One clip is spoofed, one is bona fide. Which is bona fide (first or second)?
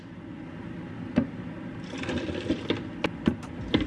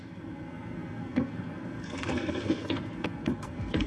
first